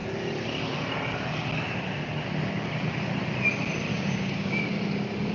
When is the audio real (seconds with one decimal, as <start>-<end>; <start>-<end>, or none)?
0.0-3.9; 4.6-5.3